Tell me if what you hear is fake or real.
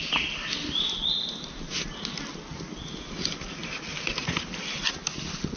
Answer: real